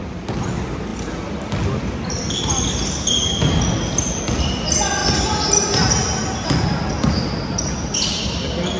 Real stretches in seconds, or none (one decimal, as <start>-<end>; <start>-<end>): 0.0-8.8